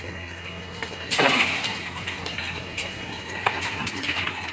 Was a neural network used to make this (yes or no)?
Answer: yes